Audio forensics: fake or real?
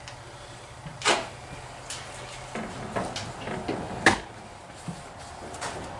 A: real